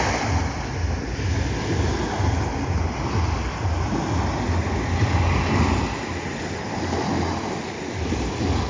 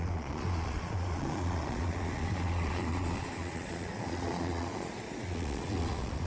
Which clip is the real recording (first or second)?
first